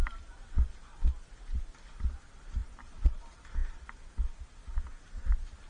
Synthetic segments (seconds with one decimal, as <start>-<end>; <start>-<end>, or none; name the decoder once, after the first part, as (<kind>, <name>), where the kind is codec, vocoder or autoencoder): 2.6-3.2 (vocoder, BigVGAN v2)